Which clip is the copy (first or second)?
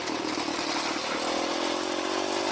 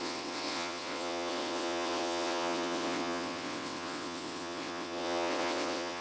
second